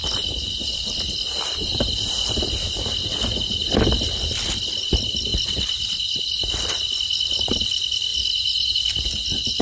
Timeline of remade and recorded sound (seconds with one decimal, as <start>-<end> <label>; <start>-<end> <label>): 0.0-0.7 recorded; 0.7-1.7 remade; 1.7-4.5 recorded; 4.5-5.3 remade; 5.3-6.2 recorded; 6.2-8.1 remade; 8.1-9.6 recorded